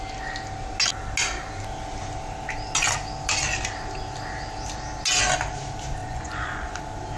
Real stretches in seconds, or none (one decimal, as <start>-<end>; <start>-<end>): 0.0-6.0; 6.8-7.2